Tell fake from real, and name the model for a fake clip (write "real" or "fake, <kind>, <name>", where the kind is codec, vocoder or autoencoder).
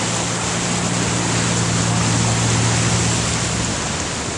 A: real